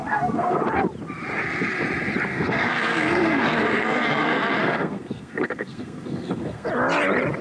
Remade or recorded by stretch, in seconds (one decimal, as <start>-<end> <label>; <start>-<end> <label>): 0.0-0.6 remade; 0.6-2.3 recorded; 2.3-6.7 remade; 6.7-7.4 recorded